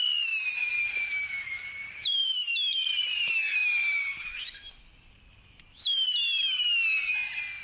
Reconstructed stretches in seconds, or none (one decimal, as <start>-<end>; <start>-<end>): 0.6-3.7